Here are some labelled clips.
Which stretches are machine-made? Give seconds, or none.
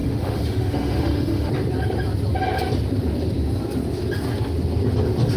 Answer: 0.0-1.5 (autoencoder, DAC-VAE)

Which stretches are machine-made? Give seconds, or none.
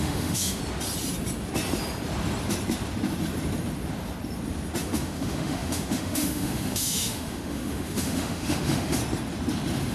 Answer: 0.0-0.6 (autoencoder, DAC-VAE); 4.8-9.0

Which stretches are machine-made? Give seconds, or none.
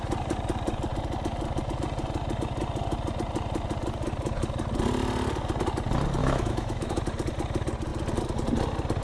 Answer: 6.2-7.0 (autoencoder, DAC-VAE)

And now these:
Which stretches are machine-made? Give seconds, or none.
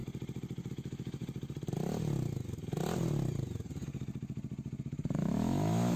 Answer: 0.7-1.2 (autoencoder, DAC-VAE); 4.8-6.0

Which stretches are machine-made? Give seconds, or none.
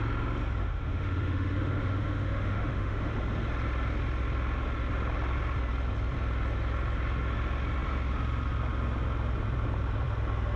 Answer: 0.6-3.1 (autoencoder, DAC-VAE)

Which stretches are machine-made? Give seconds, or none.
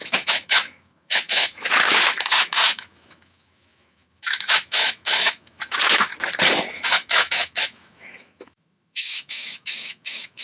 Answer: 0.0-6.1 (autoencoder, DAC-VAE); 6.7-10.4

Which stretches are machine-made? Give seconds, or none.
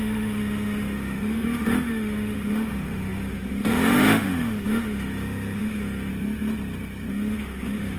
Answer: 0.0-6.1 (autoencoder, DAC-VAE); 7.1-8.0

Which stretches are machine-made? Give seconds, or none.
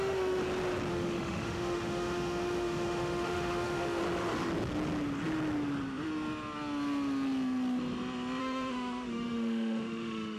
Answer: 0.0-0.4 (autoencoder, DAC-VAE); 0.9-4.0; 8.4-10.4